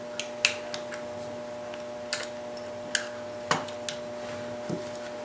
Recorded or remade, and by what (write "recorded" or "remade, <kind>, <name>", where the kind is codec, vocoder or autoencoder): recorded